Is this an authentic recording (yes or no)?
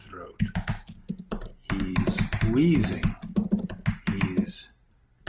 yes